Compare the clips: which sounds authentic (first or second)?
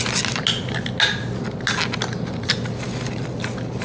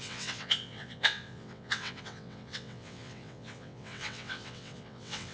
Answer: first